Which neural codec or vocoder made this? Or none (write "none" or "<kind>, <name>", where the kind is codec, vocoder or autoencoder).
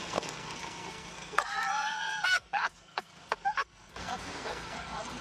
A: codec, SNAC